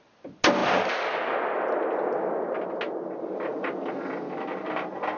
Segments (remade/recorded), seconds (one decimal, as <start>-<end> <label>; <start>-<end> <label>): 0.0-5.2 recorded